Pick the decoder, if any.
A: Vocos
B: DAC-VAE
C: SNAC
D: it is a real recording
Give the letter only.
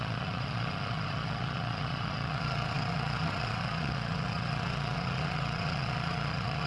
A